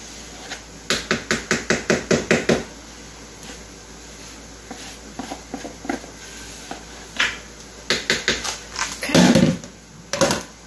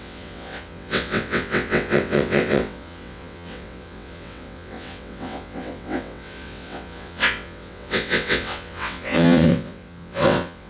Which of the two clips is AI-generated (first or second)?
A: second